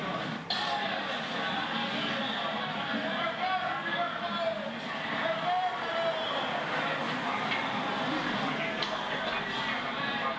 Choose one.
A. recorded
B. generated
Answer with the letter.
A